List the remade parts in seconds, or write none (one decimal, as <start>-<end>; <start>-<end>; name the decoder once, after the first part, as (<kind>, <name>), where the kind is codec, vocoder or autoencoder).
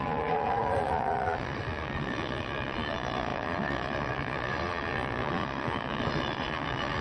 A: 0.0-7.0 (vocoder, Vocos)